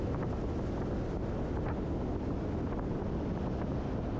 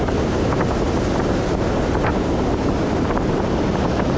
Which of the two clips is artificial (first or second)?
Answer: second